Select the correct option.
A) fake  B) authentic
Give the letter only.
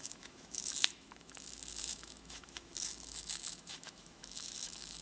A